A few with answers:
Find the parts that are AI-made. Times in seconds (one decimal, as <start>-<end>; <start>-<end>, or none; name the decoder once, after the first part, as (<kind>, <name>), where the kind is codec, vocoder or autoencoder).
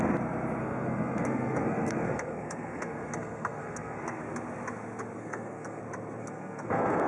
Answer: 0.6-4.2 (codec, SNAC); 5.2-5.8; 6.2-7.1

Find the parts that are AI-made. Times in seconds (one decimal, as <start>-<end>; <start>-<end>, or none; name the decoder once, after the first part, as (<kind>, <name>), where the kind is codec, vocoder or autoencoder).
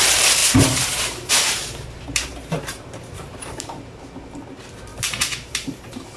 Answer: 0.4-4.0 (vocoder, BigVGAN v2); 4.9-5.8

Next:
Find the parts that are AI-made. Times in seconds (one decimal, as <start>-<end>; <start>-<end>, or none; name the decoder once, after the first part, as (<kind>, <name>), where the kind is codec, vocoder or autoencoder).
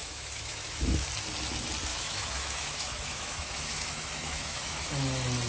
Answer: 0.0-1.1 (autoencoder, DAC-VAE); 1.9-4.9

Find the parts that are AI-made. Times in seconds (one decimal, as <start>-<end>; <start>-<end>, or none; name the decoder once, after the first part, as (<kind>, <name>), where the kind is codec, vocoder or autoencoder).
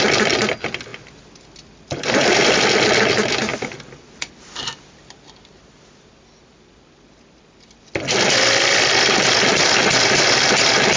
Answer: none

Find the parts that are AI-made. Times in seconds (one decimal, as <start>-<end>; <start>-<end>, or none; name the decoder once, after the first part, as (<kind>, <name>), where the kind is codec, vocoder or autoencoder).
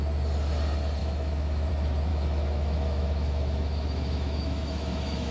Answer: 1.0-1.7 (autoencoder, DAC-VAE); 2.1-5.3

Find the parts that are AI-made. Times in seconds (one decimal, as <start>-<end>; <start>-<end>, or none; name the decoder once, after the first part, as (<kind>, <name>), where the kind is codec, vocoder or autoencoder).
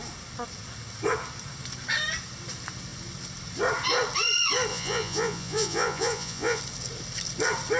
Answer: 4.7-6.6 (vocoder, Vocos)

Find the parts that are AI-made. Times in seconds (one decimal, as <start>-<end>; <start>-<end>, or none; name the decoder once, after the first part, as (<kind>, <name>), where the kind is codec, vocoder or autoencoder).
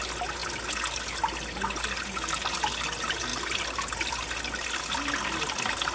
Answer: none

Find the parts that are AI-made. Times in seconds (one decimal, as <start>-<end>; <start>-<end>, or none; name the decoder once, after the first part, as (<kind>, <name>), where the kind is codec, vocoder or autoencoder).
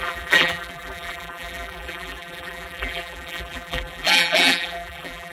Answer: 0.0-5.3 (vocoder, BigVGAN v2)